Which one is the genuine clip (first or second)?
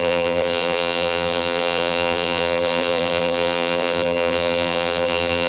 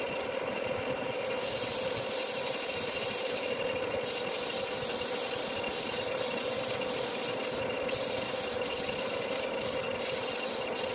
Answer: second